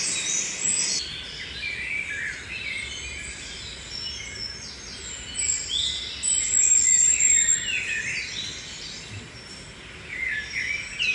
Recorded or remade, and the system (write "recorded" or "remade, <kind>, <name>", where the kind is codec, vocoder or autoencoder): recorded